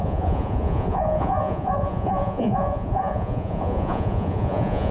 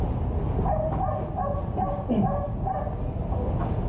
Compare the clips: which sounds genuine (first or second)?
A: second